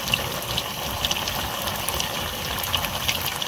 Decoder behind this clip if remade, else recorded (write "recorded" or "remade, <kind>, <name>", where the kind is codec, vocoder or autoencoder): recorded